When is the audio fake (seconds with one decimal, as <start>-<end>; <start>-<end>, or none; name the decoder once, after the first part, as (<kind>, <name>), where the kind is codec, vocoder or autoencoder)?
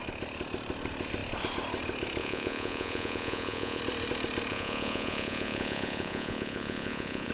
2.2-3.8 (vocoder, Vocos); 4.5-7.3